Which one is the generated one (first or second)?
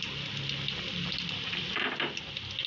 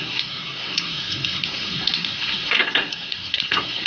second